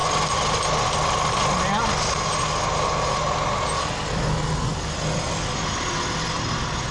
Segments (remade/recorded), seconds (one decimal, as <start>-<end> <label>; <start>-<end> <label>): 0.0-6.9 recorded